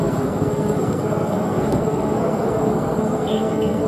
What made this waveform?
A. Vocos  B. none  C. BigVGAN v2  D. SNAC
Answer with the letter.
D